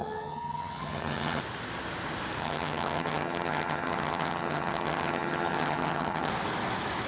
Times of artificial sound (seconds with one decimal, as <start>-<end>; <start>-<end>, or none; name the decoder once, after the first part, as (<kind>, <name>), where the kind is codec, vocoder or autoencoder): 0.0-1.4 (vocoder, HiFi-GAN); 2.4-6.3